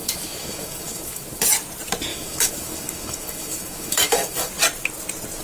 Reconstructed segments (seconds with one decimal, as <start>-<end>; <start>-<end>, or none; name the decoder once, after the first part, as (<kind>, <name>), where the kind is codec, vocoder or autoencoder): 0.0-1.4 (autoencoder, DAC-VAE); 2.1-4.5